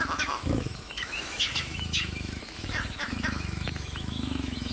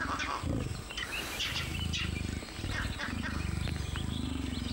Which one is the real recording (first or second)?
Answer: second